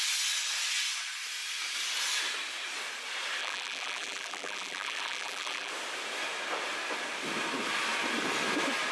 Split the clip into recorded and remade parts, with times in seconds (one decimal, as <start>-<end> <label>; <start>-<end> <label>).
0.0-3.4 recorded; 3.4-5.7 remade; 5.7-8.9 recorded